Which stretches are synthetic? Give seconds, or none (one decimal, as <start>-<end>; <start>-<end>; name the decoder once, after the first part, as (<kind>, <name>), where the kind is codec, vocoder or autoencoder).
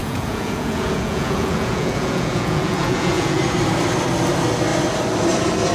0.0-3.4 (vocoder, Vocos)